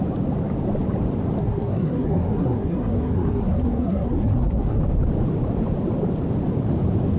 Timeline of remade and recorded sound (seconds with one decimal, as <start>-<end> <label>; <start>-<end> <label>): 0.0-1.4 recorded; 1.4-4.8 remade; 4.8-7.2 recorded